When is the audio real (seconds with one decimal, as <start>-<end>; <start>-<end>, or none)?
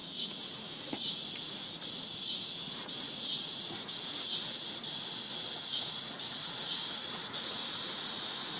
none